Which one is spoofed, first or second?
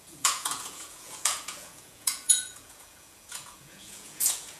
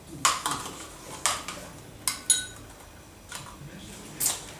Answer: first